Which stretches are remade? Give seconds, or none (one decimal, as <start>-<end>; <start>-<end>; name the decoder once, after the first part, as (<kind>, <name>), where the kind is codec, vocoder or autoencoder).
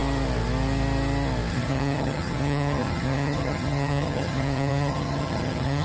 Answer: 1.5-5.8 (vocoder, HiFi-GAN)